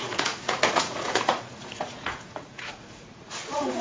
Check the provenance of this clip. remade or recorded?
remade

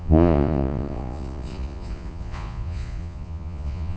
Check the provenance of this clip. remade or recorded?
remade